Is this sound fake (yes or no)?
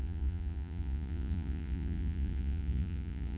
yes